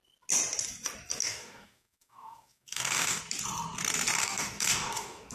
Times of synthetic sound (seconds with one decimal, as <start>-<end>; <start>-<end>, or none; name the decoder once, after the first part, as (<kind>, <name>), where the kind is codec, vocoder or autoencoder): 1.2-3.2 (codec, DAC); 4.2-5.3